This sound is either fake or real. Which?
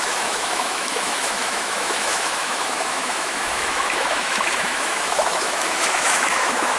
fake